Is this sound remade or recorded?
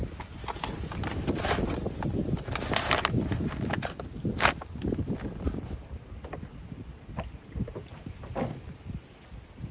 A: recorded